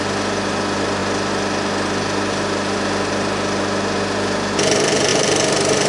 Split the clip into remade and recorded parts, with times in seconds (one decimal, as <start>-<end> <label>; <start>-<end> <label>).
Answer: 0.0-5.1 recorded; 5.1-5.9 remade